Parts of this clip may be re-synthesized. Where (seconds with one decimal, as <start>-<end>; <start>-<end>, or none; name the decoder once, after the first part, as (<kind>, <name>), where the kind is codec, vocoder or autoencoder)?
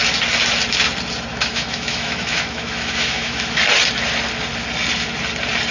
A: 1.3-3.6 (autoencoder, DAC-VAE)